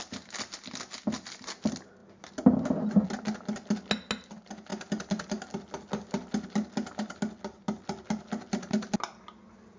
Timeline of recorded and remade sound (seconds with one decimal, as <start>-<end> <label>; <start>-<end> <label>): 0.0-9.8 recorded